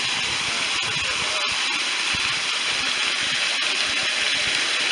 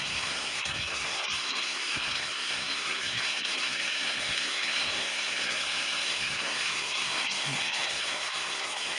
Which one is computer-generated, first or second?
second